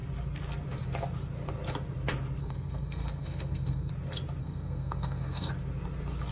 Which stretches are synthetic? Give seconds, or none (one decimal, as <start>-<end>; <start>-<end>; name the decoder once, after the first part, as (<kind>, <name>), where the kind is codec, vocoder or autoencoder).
2.4-3.9 (codec, SNAC); 4.4-5.5